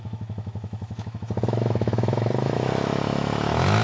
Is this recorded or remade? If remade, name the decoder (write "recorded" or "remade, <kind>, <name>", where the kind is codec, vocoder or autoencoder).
remade, autoencoder, DAC-VAE